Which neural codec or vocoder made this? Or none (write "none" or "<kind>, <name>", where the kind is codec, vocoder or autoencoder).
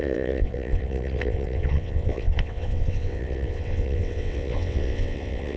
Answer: vocoder, WaveNeXt